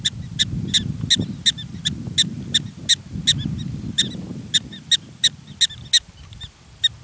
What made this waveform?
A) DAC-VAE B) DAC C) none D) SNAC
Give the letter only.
C